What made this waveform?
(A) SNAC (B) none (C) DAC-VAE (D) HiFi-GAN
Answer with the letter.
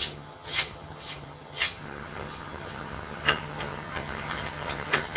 D